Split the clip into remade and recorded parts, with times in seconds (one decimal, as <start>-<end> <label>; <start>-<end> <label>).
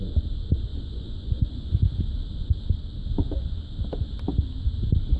0.0-0.7 recorded; 0.7-2.0 remade; 2.0-5.2 recorded